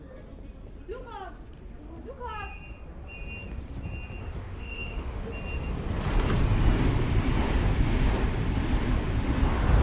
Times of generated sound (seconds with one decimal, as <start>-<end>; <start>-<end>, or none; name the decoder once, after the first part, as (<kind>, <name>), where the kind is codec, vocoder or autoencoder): 4.2-5.2 (autoencoder, DAC-VAE)